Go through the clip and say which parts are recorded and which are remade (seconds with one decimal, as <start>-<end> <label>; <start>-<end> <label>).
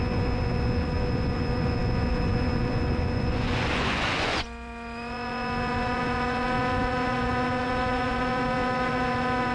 0.0-9.5 remade